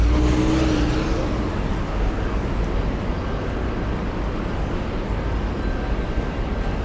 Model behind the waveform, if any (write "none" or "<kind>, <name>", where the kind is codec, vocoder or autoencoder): none